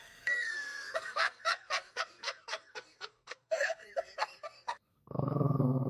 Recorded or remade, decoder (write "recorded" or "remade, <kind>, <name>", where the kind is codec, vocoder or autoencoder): remade, codec, SNAC